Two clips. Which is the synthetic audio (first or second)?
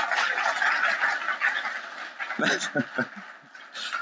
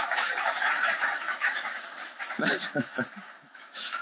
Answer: second